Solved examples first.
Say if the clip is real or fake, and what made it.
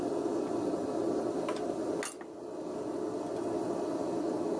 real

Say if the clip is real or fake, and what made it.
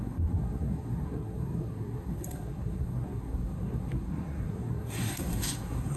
fake, codec, SNAC